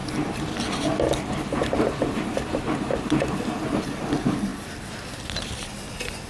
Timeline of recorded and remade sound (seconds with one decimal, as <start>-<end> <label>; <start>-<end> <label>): 0.0-4.5 recorded; 4.5-5.5 remade; 5.5-6.3 recorded